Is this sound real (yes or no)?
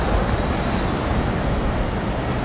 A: yes